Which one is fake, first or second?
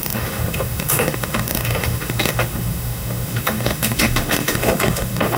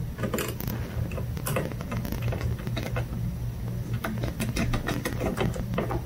first